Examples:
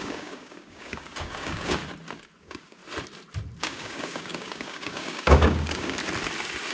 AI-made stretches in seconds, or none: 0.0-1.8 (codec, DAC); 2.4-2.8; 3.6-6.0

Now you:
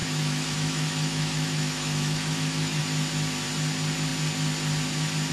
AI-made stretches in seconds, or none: 0.0-2.8 (autoencoder, DAC-VAE)

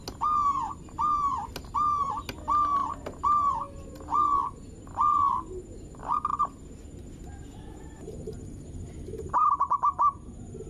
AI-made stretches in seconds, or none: none

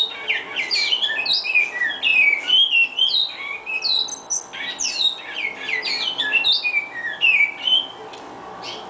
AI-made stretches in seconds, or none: none

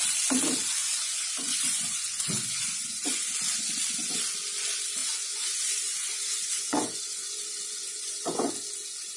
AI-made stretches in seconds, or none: 0.8-3.3 (vocoder, Vocos); 5.0-8.5

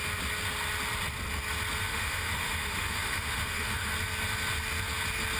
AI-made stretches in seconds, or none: 1.9-3.9 (autoencoder, DAC-VAE)

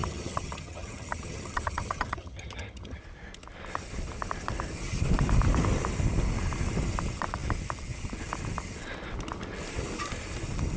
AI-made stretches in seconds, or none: 0.0-3.0 (vocoder, HiFi-GAN)